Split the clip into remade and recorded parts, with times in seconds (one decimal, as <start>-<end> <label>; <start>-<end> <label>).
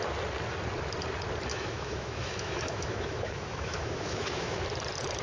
0.0-1.5 recorded; 1.5-4.6 remade; 4.6-5.2 recorded